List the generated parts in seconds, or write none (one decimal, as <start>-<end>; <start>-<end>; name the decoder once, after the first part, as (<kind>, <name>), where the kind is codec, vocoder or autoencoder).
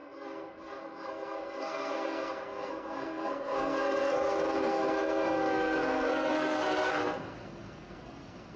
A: 0.0-8.6 (codec, SNAC)